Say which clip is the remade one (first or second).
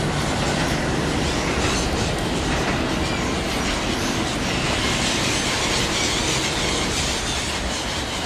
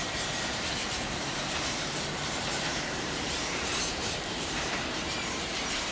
second